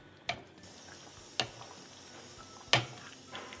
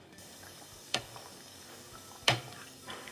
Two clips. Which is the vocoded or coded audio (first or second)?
second